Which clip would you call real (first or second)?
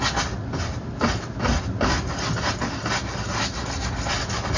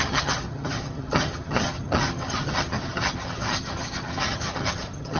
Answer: first